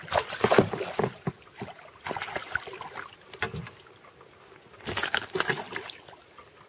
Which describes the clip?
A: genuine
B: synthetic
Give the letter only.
A